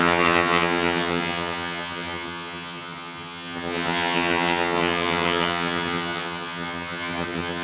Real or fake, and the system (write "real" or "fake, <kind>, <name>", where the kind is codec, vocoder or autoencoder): fake, vocoder, HiFi-GAN